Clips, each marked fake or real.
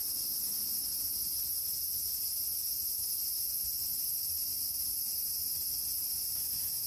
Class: real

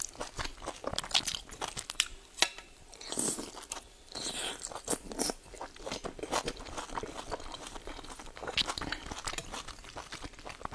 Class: real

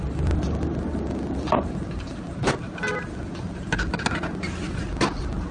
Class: real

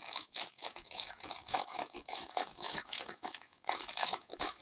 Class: fake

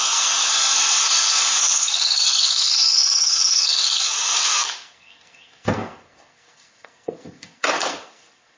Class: fake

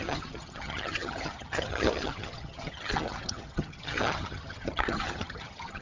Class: fake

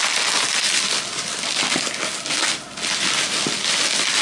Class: real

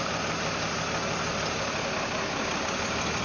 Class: real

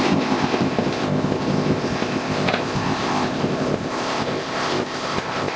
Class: fake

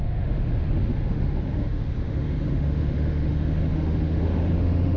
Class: fake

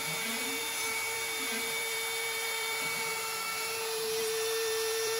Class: fake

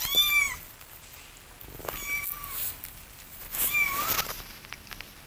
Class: real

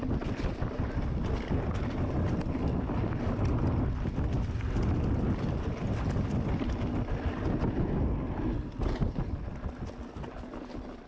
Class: real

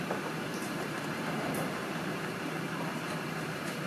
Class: fake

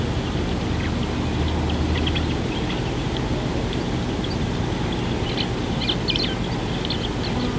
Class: real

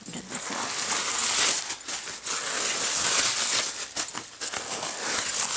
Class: real